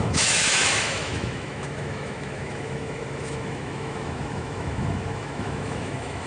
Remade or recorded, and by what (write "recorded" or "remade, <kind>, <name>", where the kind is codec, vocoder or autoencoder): remade, autoencoder, DAC-VAE